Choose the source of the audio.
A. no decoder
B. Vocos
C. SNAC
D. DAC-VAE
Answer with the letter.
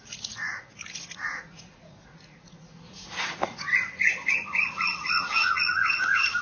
B